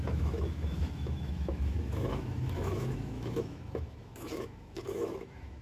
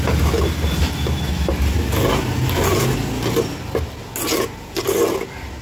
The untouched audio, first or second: second